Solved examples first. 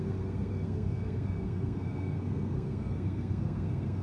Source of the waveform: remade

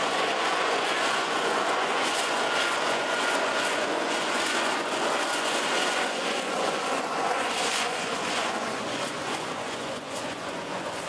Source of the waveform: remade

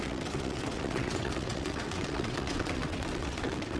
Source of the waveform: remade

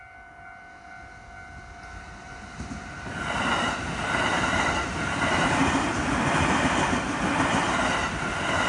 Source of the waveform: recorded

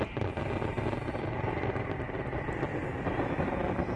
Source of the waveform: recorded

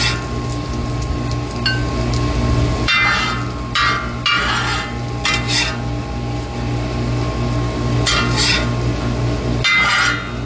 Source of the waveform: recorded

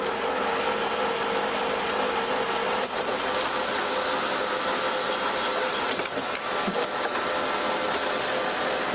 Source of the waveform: recorded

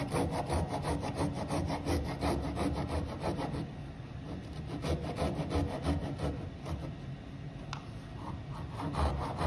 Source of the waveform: recorded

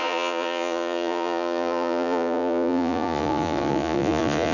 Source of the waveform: remade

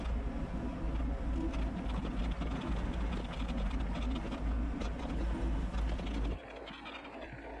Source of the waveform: recorded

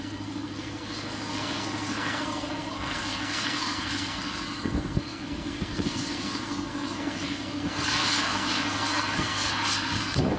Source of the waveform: remade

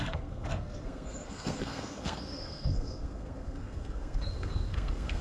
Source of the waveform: remade